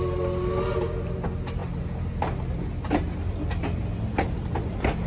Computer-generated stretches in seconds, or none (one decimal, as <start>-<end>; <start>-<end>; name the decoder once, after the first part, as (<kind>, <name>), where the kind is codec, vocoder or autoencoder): none